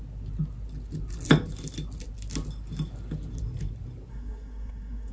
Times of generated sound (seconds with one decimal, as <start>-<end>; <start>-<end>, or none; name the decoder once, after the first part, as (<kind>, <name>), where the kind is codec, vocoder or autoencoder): 4.1-5.1 (codec, SNAC)